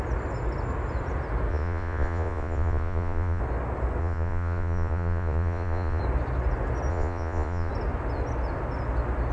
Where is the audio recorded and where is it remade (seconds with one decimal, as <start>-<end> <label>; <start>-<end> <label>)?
0.0-1.5 recorded; 1.5-3.4 remade; 3.4-4.0 recorded; 4.0-6.0 remade; 6.0-6.9 recorded; 6.9-7.7 remade; 7.7-9.3 recorded